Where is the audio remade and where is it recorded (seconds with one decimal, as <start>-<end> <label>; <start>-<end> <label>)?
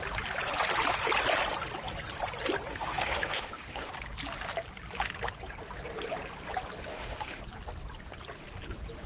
0.0-2.7 recorded; 2.7-3.9 remade; 3.9-6.9 recorded; 6.9-7.4 remade; 7.4-9.1 recorded